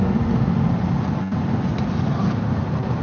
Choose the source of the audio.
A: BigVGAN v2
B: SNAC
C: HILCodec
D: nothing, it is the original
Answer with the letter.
D